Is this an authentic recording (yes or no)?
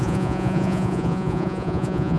no